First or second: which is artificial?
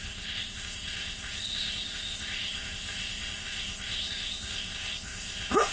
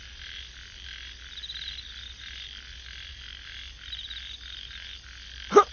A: first